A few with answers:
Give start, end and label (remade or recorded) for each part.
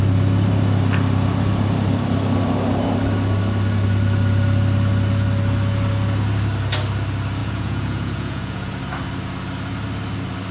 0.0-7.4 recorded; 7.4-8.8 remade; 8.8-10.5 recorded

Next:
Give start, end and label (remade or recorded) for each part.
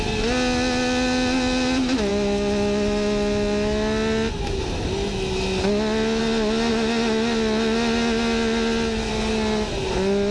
0.0-10.3 recorded